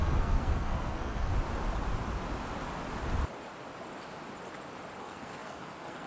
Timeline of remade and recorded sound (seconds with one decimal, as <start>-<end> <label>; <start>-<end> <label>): 0.0-1.3 remade; 1.3-5.0 recorded; 5.0-6.1 remade